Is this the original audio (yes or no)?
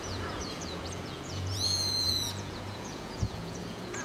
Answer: no